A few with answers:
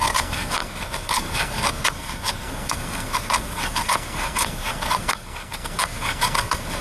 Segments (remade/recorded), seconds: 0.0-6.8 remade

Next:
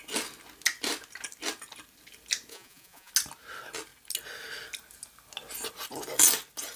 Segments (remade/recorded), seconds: 0.0-2.5 recorded; 2.5-3.1 remade; 3.1-6.8 recorded